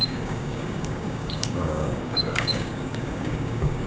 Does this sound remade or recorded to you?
remade